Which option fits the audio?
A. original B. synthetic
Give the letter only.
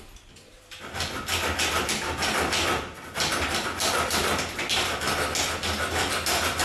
A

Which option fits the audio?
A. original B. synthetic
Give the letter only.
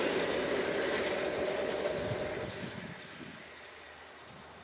A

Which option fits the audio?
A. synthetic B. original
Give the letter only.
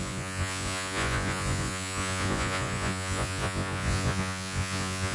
A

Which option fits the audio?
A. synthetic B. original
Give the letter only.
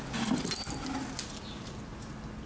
B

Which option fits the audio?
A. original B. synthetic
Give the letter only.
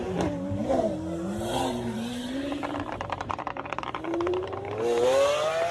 B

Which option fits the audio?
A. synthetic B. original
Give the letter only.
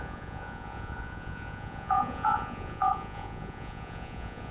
A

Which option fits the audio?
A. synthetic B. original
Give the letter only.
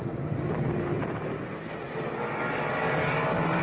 B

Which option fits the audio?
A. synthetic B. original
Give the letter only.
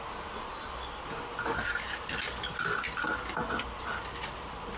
B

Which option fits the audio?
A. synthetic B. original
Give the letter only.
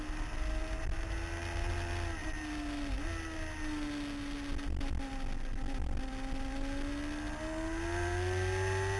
B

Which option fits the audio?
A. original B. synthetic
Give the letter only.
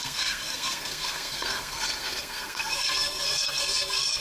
B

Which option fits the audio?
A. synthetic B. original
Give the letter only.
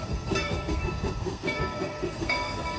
A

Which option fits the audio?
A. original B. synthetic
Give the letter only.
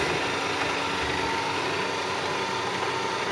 A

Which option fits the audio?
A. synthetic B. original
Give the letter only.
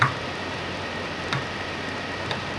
B